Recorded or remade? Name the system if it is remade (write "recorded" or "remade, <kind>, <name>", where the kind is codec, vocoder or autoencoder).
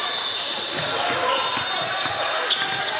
recorded